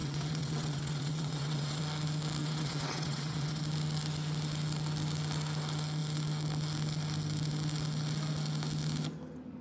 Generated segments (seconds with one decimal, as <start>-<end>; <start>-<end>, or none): 0.0-1.8; 2.4-3.6